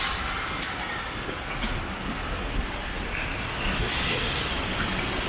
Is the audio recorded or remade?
recorded